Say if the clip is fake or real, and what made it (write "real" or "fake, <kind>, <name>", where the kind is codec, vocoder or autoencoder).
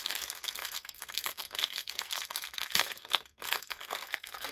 fake, codec, SNAC